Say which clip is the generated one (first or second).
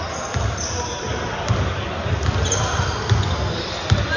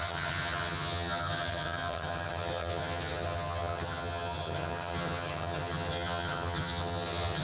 second